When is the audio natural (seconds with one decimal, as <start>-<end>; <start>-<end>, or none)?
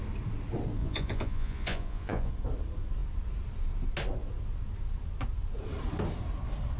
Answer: 0.0-0.8; 2.3-6.8